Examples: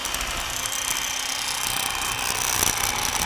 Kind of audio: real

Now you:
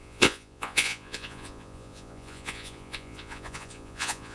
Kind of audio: fake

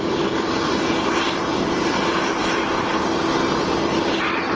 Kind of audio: real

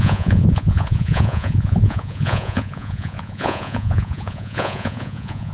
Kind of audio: fake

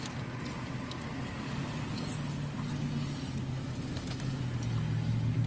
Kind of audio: real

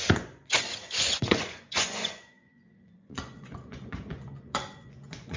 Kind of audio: fake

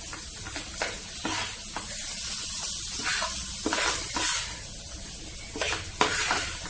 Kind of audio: real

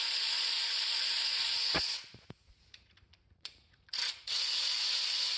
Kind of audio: fake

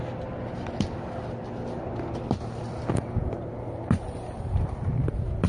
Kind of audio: real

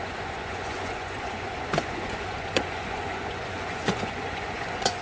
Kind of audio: fake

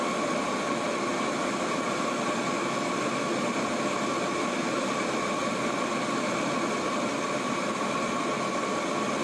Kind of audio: real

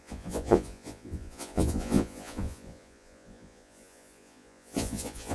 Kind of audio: fake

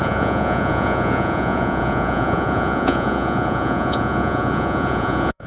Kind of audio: fake